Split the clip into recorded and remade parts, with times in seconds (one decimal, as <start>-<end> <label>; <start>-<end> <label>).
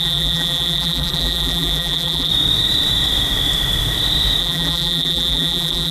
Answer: 0.0-2.3 remade; 2.3-4.4 recorded; 4.4-5.9 remade